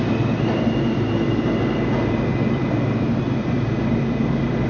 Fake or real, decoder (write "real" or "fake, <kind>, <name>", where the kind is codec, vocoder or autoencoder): real